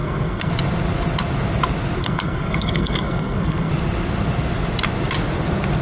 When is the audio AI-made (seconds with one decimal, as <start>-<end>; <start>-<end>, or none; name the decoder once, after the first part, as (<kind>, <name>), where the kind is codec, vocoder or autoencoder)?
0.0-0.5 (codec, SNAC); 2.0-3.7